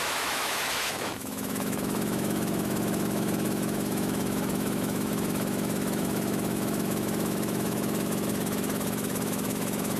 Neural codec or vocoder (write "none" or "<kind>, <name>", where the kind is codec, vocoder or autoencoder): autoencoder, DAC-VAE